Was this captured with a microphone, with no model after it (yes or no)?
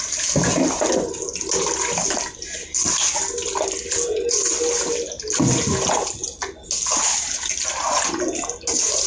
yes